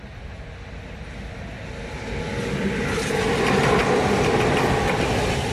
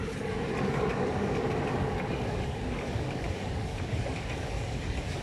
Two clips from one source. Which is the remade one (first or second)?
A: second